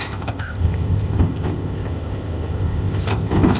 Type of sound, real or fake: fake